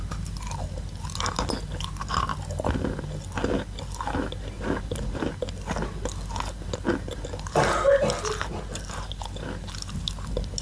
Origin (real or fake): real